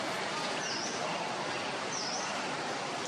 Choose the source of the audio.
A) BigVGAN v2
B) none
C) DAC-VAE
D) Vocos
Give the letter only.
B